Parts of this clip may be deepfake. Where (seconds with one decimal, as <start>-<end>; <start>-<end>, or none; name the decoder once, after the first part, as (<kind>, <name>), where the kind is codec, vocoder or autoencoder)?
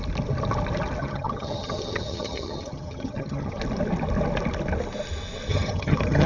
1.0-3.6 (vocoder, HiFi-GAN); 5.5-6.3